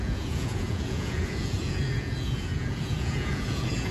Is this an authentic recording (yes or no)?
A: no